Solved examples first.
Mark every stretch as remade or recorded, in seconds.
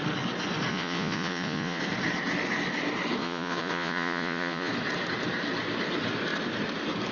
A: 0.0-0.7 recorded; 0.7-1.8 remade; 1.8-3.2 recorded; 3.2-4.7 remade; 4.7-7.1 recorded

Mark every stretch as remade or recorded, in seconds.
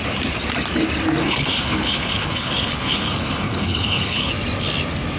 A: 0.0-1.2 recorded; 1.2-4.3 remade; 4.3-5.2 recorded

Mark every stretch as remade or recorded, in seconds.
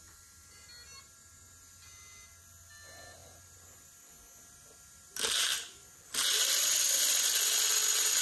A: 0.0-8.2 recorded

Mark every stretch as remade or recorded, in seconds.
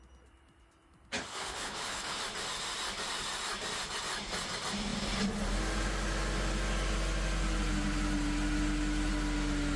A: 0.0-1.3 recorded; 1.3-2.2 remade; 2.2-9.8 recorded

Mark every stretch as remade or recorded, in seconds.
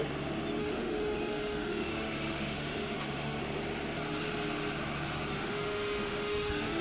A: 0.0-0.6 recorded; 0.6-3.4 remade; 3.4-5.3 recorded; 5.3-6.8 remade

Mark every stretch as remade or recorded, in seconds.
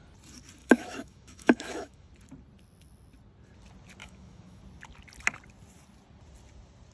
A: 0.0-0.6 recorded; 0.6-2.1 remade; 2.1-4.0 recorded; 4.0-4.6 remade; 4.6-6.9 recorded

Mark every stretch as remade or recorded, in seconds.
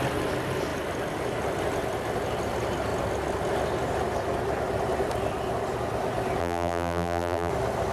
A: 0.0-6.4 recorded; 6.4-7.5 remade; 7.5-7.9 recorded